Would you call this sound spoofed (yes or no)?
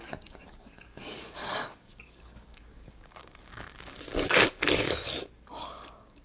yes